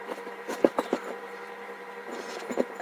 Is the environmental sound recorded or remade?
remade